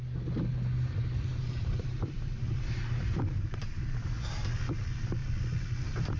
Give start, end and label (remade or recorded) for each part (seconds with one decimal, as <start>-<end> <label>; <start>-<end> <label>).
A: 0.0-1.3 recorded; 1.3-4.3 remade; 4.3-6.2 recorded